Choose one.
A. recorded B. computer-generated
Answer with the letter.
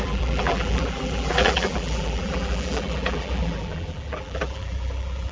B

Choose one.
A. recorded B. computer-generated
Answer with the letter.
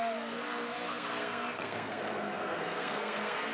B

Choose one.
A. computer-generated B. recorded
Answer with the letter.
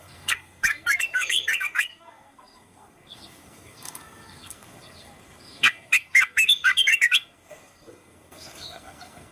A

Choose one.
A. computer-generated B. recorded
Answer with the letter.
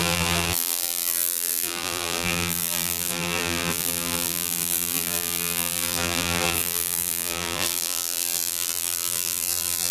A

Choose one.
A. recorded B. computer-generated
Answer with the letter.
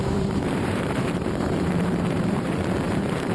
B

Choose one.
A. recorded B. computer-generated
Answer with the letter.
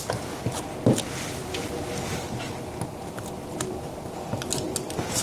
A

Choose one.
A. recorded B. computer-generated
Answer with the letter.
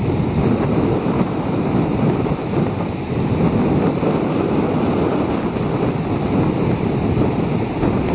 B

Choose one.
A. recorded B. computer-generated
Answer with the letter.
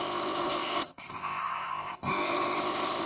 B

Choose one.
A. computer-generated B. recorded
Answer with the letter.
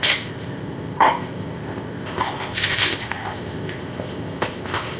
A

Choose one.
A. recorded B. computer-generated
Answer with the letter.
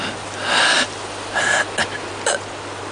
A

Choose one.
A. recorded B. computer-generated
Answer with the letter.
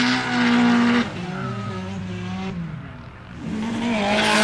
A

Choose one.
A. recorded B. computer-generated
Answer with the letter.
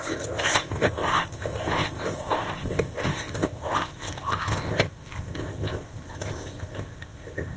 B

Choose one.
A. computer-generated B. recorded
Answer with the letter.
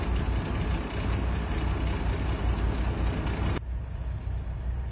B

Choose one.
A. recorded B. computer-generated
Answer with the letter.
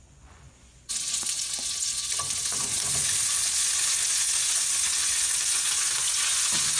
B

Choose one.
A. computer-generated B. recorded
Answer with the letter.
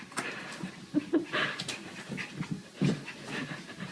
B